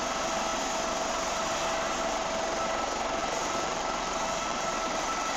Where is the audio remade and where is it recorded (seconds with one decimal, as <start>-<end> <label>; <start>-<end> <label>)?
0.0-3.2 recorded; 3.2-5.4 remade